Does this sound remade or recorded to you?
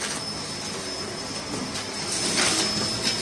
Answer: recorded